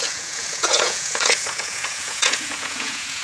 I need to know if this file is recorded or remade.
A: remade